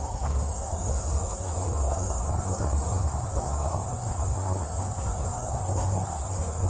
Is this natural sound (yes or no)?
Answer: no